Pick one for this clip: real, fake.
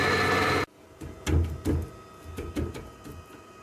real